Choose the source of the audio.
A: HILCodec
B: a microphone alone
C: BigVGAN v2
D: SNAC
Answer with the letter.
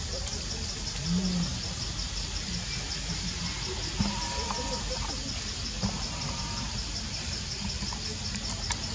B